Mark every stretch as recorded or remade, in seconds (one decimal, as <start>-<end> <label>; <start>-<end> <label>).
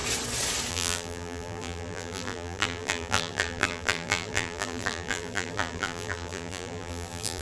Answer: 0.0-0.7 recorded; 0.7-7.4 remade